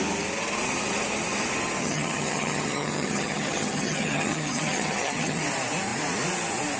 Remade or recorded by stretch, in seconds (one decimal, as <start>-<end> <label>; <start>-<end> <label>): 0.0-1.8 recorded; 1.8-5.4 remade; 5.4-6.8 recorded